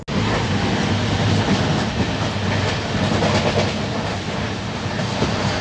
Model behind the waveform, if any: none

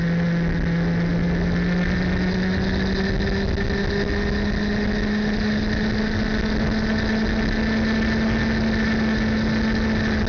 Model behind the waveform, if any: none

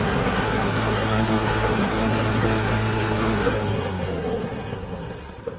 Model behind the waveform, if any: codec, SNAC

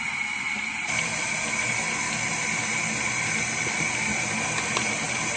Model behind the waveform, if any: none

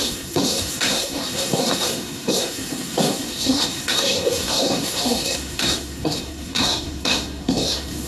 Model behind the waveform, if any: codec, SNAC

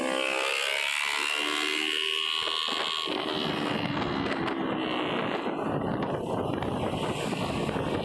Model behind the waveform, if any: none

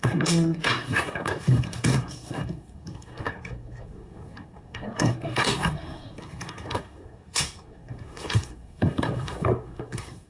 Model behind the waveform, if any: codec, SNAC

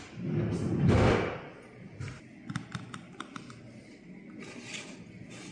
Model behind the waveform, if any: none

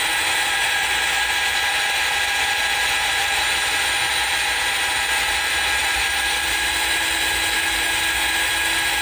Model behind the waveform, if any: none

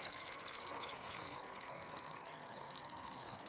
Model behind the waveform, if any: codec, SNAC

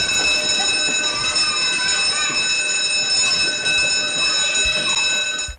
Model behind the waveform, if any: none